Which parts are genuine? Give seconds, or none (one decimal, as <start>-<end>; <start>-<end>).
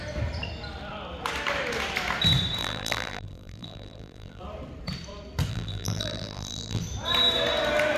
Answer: 0.0-2.6; 4.4-5.5; 6.8-8.0